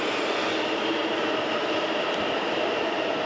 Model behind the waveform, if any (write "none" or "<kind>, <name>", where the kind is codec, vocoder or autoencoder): vocoder, BigVGAN v2